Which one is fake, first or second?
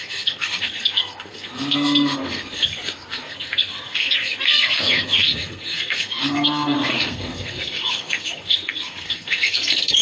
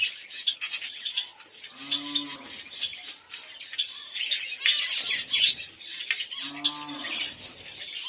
first